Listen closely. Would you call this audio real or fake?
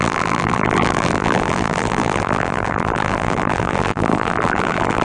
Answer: fake